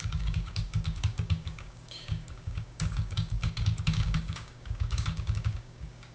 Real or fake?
fake